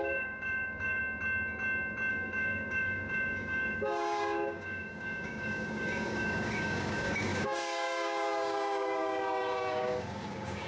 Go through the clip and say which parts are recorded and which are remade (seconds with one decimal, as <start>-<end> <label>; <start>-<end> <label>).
0.0-1.0 remade; 1.0-2.1 recorded; 2.1-10.7 remade